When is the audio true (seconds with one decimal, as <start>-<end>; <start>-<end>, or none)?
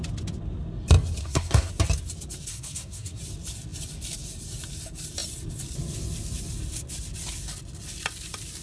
0.0-1.2; 1.7-2.5; 3.2-8.6